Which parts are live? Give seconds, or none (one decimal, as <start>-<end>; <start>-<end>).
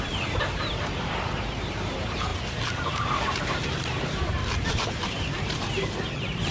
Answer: 2.3-3.0; 4.4-4.9